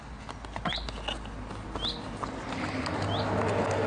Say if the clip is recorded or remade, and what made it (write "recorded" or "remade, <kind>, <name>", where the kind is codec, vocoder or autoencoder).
recorded